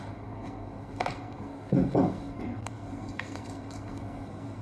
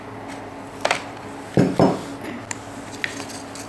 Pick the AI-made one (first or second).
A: first